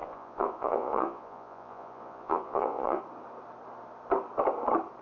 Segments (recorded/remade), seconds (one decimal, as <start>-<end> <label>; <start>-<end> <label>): 0.0-3.0 remade; 3.0-5.0 recorded